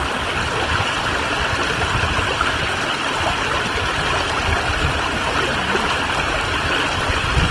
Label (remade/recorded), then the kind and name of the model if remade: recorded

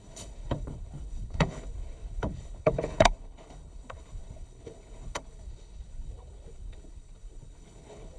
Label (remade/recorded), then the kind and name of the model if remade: remade, codec, HILCodec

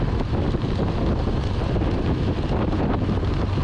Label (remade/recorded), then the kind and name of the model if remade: recorded